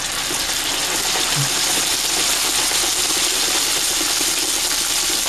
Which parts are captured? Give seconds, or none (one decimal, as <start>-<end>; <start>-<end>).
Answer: 0.0-5.3